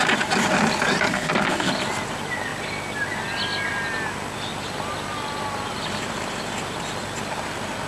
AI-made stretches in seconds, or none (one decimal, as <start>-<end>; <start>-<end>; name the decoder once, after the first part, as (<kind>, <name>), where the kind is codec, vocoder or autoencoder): 1.1-1.7 (codec, SNAC)